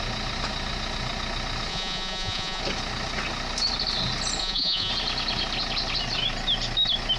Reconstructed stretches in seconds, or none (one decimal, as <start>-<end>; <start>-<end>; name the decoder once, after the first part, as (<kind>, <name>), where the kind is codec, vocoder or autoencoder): 1.7-2.6 (vocoder, Vocos); 4.4-4.9